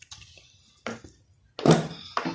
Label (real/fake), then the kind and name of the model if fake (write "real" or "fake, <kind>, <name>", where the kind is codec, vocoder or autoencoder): real